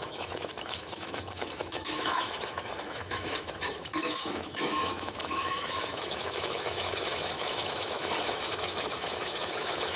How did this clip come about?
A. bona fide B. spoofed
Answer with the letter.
B